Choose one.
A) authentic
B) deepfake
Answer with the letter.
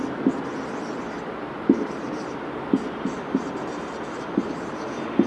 B